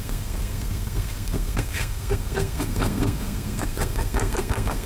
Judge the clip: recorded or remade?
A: remade